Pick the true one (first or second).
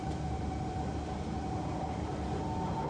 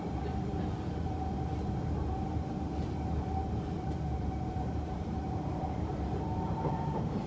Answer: first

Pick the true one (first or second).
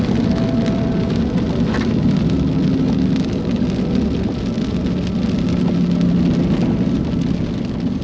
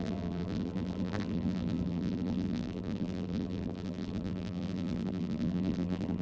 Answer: first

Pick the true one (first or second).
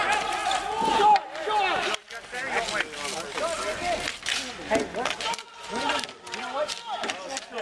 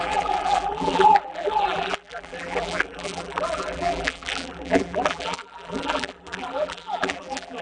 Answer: first